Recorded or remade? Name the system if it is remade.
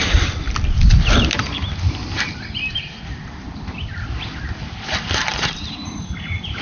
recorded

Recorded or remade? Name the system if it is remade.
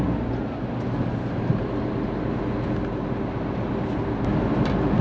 recorded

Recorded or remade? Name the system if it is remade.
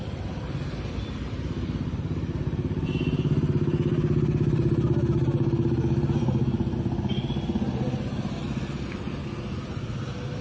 recorded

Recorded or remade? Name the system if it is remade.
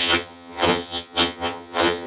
remade, vocoder, HiFi-GAN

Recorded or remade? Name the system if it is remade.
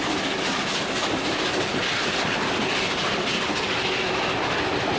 recorded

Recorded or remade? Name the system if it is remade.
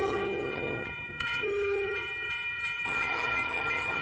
remade, vocoder, HiFi-GAN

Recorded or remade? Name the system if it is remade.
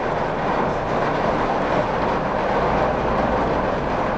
recorded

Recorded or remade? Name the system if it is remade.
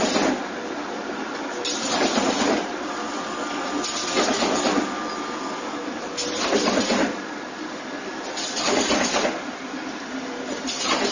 recorded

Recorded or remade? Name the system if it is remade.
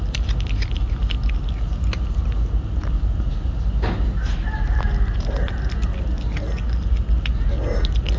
recorded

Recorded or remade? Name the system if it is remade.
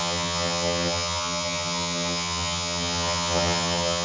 remade, vocoder, HiFi-GAN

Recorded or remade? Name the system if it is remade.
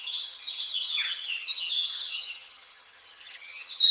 remade, vocoder, HiFi-GAN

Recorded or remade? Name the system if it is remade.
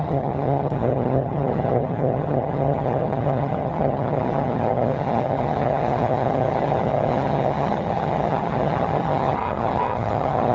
remade, vocoder, HiFi-GAN